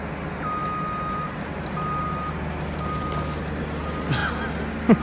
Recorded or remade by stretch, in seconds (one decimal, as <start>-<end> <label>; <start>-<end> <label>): 0.0-5.0 recorded